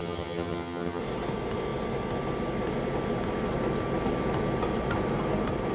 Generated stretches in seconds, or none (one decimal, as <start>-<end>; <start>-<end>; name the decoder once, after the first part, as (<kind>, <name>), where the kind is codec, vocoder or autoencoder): 0.0-1.0 (vocoder, HiFi-GAN)